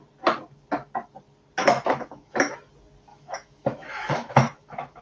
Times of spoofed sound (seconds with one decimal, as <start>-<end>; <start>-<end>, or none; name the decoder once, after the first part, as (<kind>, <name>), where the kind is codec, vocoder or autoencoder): 1.6-2.5 (autoencoder, DAC-VAE); 3.1-5.0